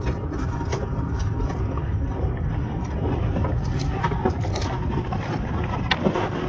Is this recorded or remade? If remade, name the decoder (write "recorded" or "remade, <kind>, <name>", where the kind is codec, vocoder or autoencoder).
recorded